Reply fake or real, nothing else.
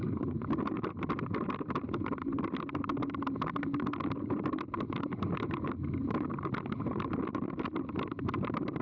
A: real